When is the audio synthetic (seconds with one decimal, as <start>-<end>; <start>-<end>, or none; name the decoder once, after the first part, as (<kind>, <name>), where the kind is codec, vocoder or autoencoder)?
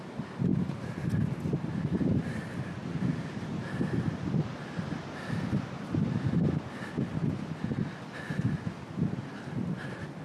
none